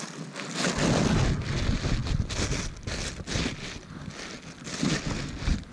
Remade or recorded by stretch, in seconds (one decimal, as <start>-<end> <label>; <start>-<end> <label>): 0.0-5.7 recorded